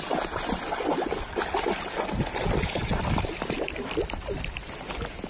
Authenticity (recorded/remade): recorded